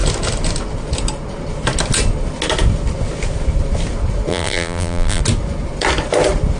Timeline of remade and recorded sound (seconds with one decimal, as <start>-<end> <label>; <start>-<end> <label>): 0.0-4.3 recorded; 4.3-5.2 remade; 5.2-6.6 recorded

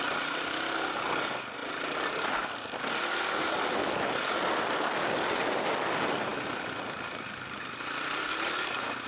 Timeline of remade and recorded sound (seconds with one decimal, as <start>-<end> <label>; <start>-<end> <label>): 0.0-9.1 recorded

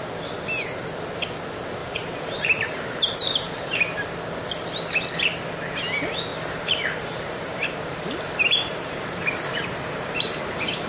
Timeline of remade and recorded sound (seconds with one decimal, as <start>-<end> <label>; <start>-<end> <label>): 0.0-1.8 recorded; 1.8-4.1 remade; 4.1-6.3 recorded; 6.3-10.4 remade; 10.4-10.9 recorded